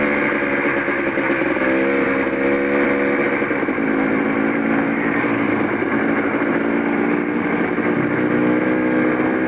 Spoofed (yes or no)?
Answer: no